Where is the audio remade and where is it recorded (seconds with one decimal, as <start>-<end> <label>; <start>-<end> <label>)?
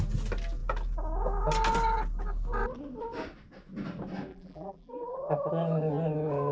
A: 0.0-4.3 recorded; 4.3-5.2 remade; 5.2-6.5 recorded